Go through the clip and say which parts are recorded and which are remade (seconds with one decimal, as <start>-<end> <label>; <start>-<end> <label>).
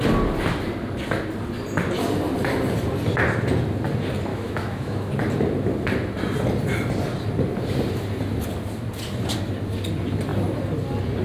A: 0.0-4.3 recorded; 4.3-5.1 remade; 5.1-11.2 recorded